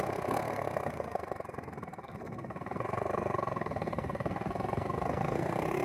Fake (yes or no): yes